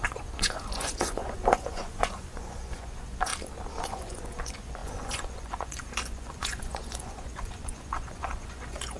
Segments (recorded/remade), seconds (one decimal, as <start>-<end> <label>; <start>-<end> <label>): 0.0-3.3 remade; 3.3-3.8 recorded; 3.8-9.0 remade